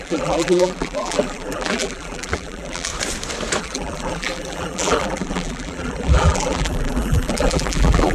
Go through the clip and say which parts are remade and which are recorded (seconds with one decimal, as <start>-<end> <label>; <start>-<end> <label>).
0.0-2.9 remade; 2.9-3.6 recorded; 3.6-8.1 remade